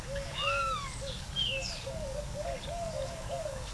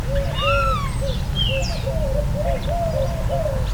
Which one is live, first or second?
second